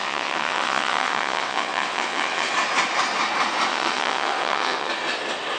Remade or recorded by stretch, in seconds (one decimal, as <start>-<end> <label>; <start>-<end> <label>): 0.0-2.5 remade; 2.5-3.7 recorded; 3.7-4.9 remade; 4.9-5.6 recorded